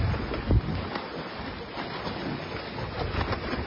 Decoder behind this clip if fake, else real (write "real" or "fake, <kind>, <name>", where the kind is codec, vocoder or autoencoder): real